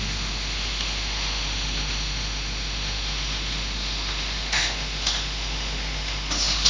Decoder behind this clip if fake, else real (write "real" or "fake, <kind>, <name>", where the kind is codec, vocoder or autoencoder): fake, autoencoder, DAC-VAE